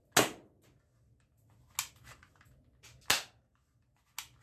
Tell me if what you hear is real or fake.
real